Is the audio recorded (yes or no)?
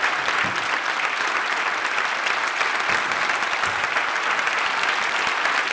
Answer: yes